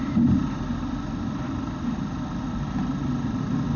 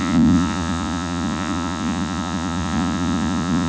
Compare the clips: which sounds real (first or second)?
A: first